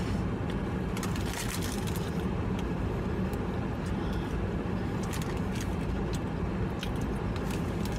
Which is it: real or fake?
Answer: real